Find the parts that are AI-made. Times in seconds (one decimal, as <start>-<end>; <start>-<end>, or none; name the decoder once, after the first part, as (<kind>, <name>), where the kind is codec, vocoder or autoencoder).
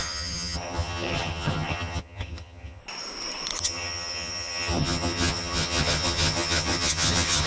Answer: 0.0-2.8 (vocoder, HiFi-GAN); 3.6-7.5